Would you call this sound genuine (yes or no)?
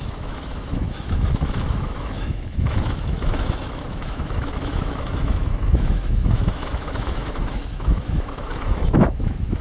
no